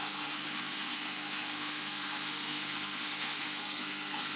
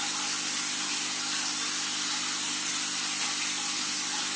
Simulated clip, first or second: first